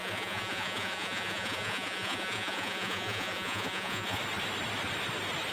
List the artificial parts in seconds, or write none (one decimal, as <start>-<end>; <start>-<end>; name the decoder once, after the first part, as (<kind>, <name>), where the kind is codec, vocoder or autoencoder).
0.0-4.2 (vocoder, Vocos)